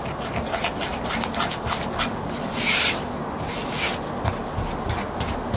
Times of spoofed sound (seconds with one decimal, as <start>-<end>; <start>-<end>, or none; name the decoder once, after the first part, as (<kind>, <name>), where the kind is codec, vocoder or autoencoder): none